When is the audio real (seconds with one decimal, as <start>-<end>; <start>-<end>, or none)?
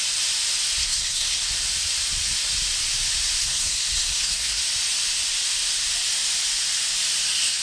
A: 0.0-0.8; 1.5-3.4; 4.6-7.6